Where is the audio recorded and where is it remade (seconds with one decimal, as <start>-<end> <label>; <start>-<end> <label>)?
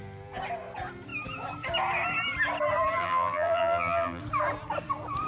0.0-3.0 recorded; 3.0-4.2 remade; 4.2-5.3 recorded